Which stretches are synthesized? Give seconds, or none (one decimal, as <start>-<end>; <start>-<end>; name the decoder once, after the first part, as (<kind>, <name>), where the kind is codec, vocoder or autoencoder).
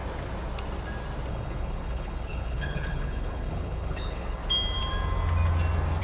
1.3-4.4 (codec, HILCodec)